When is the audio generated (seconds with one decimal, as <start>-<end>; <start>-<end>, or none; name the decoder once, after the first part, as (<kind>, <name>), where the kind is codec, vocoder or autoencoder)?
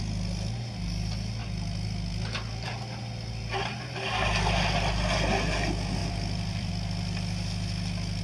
6.0-6.7 (vocoder, BigVGAN v2)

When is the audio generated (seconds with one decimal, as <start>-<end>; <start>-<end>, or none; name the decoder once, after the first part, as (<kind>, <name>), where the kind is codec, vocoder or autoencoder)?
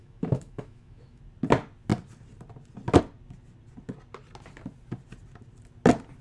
0.0-1.2 (autoencoder, DAC-VAE)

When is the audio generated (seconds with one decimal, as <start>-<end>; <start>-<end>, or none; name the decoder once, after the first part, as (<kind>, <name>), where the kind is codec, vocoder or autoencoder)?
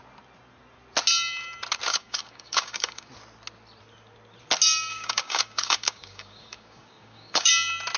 1.9-3.1 (codec, DAC); 4.9-7.5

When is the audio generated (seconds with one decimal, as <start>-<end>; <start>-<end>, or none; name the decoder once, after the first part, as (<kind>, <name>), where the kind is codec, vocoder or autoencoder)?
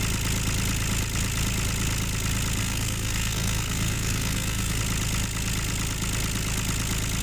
2.6-4.8 (codec, SNAC)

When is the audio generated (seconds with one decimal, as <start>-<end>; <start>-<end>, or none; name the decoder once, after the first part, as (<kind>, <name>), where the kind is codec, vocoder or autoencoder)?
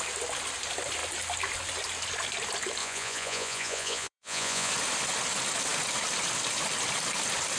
2.8-4.7 (vocoder, Vocos)